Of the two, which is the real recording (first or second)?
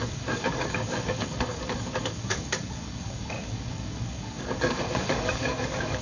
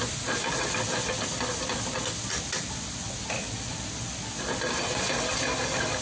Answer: second